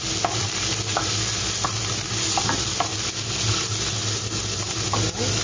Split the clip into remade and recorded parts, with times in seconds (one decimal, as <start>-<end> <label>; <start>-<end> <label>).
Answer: 0.0-5.4 recorded